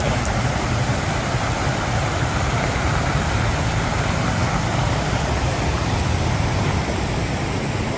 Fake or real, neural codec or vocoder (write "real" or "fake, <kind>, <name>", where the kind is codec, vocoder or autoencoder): fake, vocoder, BigVGAN v2